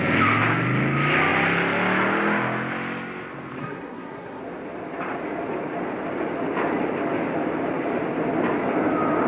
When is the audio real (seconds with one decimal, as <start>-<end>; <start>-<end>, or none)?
0.0-3.6; 4.4-9.3